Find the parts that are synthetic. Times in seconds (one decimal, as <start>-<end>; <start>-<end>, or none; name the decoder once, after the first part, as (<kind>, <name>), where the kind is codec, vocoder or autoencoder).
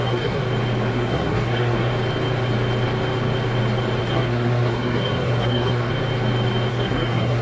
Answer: 0.0-0.4 (codec, SNAC); 0.9-1.9; 4.0-5.9; 6.7-7.4